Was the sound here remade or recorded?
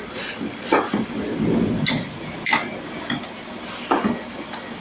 recorded